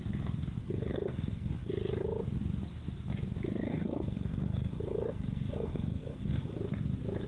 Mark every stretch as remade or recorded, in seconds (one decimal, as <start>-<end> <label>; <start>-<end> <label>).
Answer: 0.0-0.6 recorded; 0.6-1.7 remade; 1.7-3.7 recorded; 3.7-6.6 remade; 6.6-7.3 recorded